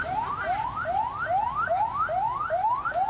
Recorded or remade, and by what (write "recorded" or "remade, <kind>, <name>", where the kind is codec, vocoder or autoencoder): recorded